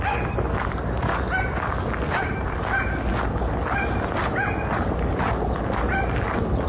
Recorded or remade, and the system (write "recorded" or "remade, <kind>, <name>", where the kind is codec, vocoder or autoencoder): recorded